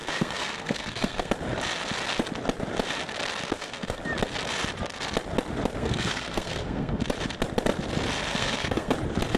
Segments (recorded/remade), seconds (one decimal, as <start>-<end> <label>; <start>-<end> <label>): 0.0-1.3 remade; 1.3-3.4 recorded; 3.4-4.0 remade; 4.0-5.8 recorded; 5.8-7.0 remade; 7.0-8.3 recorded; 8.3-8.9 remade; 8.9-9.4 recorded